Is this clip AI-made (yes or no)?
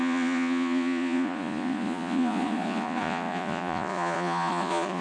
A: yes